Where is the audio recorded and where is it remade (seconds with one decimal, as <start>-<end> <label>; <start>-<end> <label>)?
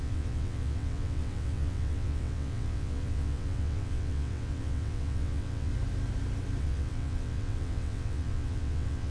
0.0-5.7 remade; 5.7-6.6 recorded; 6.6-9.1 remade